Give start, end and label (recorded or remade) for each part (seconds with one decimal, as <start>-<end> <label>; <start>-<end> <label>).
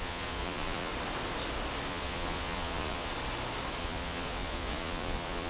0.0-0.9 remade; 0.9-1.9 recorded; 1.9-3.1 remade; 3.1-3.8 recorded; 3.8-5.5 remade